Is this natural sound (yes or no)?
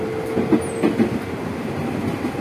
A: yes